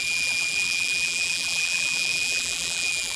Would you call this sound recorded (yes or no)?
no